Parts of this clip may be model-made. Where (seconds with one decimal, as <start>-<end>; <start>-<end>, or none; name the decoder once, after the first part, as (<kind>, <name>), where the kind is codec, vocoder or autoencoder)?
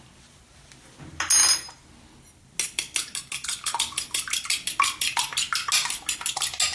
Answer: none